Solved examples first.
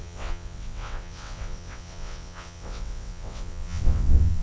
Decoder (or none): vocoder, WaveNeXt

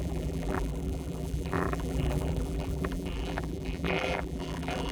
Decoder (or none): vocoder, BigVGAN v2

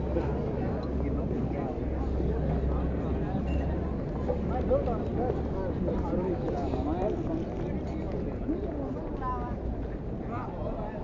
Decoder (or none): none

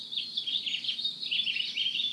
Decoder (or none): none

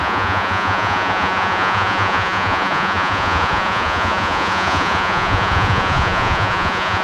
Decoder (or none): vocoder, Vocos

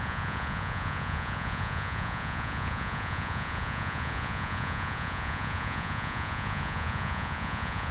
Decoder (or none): vocoder, Vocos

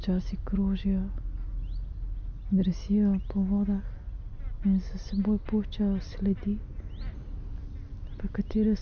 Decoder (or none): none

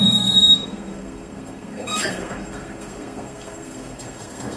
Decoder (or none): codec, SNAC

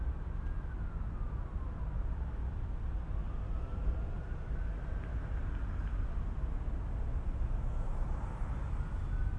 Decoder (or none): none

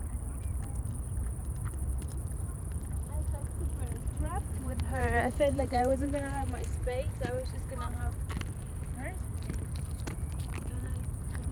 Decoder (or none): vocoder, BigVGAN v2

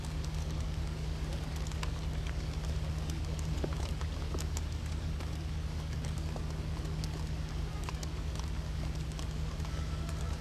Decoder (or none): codec, DAC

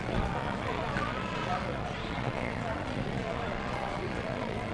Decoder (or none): vocoder, Vocos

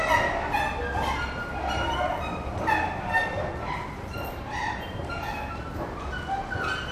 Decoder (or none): none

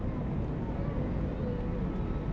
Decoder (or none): none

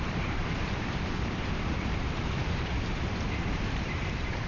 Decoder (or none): vocoder, BigVGAN v2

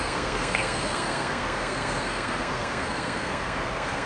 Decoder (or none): codec, SNAC